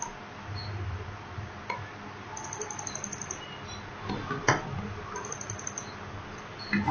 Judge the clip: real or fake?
real